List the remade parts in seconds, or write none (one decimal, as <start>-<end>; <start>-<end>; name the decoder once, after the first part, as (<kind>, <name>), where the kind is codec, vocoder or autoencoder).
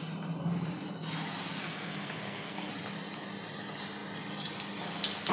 1.6-2.7 (codec, SNAC)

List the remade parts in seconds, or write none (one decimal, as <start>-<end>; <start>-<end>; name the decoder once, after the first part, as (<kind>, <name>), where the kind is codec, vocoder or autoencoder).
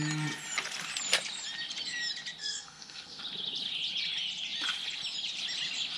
2.4-3.2 (codec, SNAC)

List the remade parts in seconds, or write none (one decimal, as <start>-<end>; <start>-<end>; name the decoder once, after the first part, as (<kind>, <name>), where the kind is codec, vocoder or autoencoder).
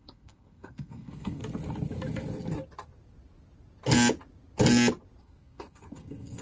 0.0-1.4 (codec, SNAC); 5.2-6.4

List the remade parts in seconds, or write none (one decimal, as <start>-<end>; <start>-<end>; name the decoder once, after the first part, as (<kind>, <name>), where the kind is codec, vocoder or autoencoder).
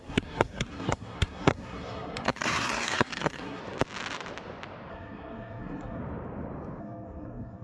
0.0-3.6 (codec, SNAC); 4.9-6.0; 6.8-7.6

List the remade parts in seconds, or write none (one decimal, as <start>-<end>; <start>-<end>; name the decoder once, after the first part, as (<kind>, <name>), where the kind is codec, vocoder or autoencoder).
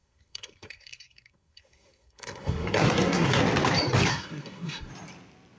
0.0-3.4 (codec, SNAC); 4.1-4.9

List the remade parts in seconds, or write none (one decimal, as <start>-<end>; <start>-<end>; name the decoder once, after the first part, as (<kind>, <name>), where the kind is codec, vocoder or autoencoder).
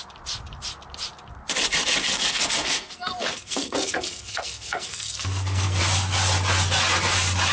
2.0-5.8 (codec, SNAC)